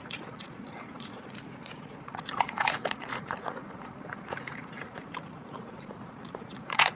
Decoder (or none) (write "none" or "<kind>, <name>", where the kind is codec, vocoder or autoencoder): vocoder, Vocos